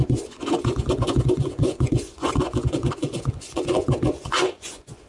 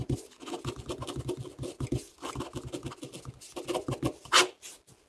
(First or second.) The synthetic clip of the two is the first